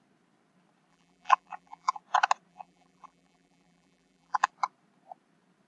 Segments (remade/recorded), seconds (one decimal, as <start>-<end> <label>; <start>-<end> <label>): 0.0-0.9 recorded; 0.9-2.0 remade; 2.0-2.5 recorded; 2.5-4.5 remade; 4.5-5.7 recorded